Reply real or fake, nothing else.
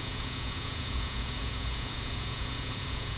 fake